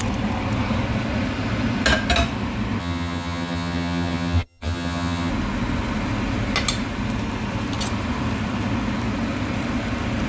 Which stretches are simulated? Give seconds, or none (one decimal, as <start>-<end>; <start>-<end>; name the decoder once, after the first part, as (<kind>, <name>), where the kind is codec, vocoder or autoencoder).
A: 2.8-5.3 (vocoder, HiFi-GAN)